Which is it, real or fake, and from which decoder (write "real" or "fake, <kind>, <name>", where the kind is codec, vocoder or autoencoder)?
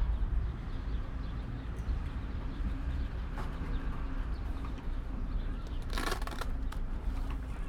fake, vocoder, BigVGAN v2